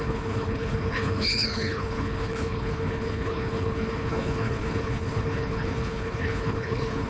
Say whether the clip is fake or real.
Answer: fake